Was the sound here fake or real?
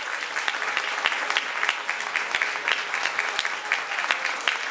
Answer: real